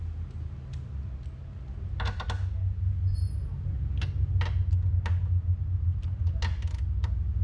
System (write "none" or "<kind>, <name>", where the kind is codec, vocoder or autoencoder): none